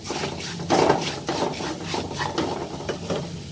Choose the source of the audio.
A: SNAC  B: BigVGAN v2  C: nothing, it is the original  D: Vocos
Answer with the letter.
C